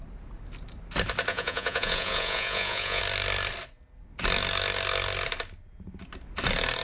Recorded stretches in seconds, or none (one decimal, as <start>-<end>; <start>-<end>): 0.0-1.3; 3.0-6.8